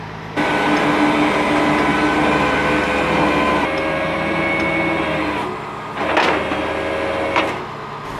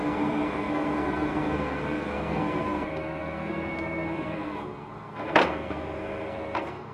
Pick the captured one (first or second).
first